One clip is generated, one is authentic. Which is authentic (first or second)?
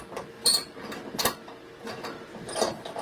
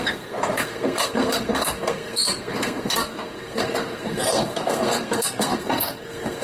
first